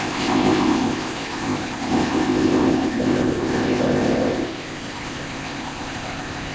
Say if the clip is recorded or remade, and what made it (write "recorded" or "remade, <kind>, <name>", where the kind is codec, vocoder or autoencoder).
remade, codec, ZipCodec